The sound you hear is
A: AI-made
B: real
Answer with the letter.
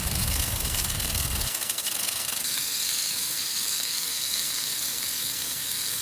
A